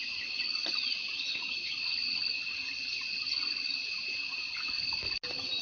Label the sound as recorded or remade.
recorded